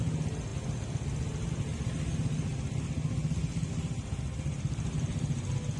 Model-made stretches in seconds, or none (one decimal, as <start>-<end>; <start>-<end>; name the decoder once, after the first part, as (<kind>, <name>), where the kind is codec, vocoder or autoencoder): none